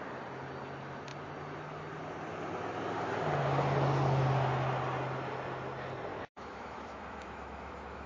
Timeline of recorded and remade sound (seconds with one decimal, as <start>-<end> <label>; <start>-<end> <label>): 0.0-6.1 recorded; 6.1-8.1 remade